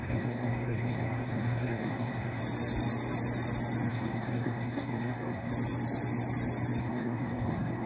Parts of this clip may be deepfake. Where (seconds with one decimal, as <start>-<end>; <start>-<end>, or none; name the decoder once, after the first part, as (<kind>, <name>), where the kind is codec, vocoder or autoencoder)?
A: 0.0-2.4 (codec, SNAC); 3.9-5.5; 6.8-7.9